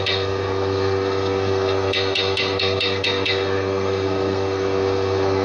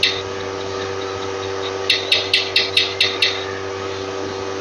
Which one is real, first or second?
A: second